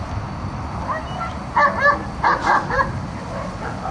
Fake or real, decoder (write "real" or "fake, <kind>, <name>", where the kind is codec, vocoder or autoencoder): real